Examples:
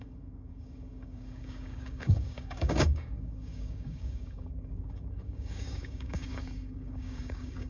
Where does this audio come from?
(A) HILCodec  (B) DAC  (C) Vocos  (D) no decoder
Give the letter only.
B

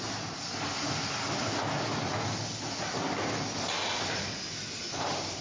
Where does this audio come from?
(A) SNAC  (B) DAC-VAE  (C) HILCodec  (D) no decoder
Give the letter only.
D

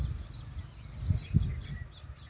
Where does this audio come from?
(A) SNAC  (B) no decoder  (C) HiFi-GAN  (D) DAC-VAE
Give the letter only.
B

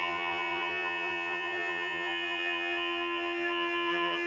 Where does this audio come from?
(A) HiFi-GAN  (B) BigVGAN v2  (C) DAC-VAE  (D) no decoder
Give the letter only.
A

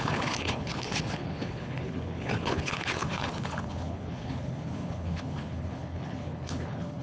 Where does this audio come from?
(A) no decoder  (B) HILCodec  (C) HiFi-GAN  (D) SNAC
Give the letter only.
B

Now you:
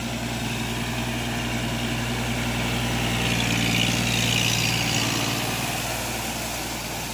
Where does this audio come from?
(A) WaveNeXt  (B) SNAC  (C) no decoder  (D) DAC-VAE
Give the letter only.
C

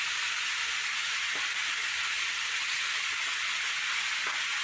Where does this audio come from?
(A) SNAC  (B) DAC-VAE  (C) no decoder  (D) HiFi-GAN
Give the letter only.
C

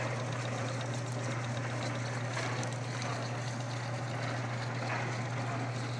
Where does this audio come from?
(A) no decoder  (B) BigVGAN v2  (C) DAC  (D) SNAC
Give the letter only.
A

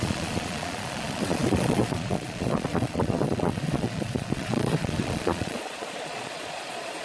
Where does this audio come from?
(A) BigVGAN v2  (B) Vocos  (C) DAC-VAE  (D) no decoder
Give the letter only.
B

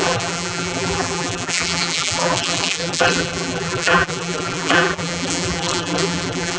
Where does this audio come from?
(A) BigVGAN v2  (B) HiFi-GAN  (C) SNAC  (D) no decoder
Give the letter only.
A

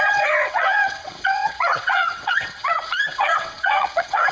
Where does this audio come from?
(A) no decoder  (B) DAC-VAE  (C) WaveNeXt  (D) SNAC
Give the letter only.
C